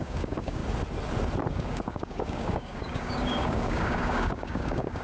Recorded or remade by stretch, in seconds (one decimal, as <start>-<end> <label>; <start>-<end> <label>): 0.0-0.6 remade; 0.6-1.5 recorded; 1.5-5.0 remade